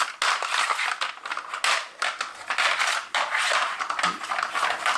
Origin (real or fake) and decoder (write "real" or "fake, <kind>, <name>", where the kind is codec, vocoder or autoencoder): real